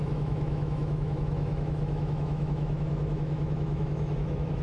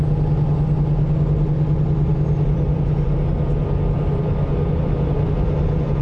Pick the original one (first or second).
second